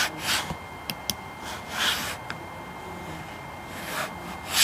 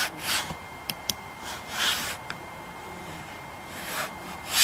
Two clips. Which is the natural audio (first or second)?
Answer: first